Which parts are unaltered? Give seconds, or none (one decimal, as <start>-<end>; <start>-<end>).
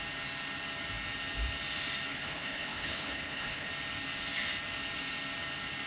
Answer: 0.0-2.1; 3.7-5.9